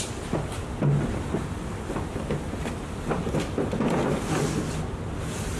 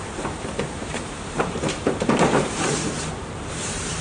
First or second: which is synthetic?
second